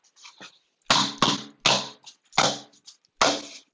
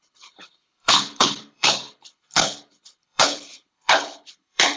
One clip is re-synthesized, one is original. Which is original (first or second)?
first